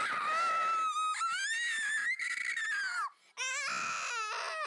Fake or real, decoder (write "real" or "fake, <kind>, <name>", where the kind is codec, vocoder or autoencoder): real